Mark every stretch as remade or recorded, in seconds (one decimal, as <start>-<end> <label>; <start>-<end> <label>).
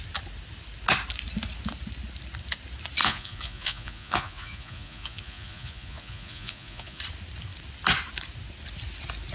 0.0-3.0 recorded; 3.0-7.0 remade; 7.0-9.3 recorded